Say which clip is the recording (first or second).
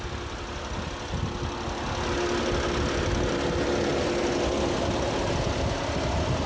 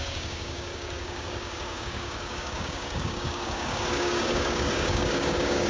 first